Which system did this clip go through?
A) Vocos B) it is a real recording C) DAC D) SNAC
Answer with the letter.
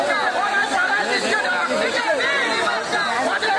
B